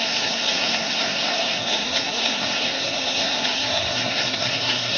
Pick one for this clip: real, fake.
fake